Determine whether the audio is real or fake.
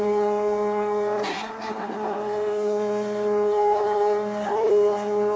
fake